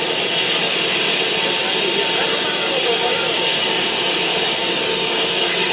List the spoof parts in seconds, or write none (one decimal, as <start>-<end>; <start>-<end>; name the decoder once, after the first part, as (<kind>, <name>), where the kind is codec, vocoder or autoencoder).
2.3-5.7 (codec, DAC)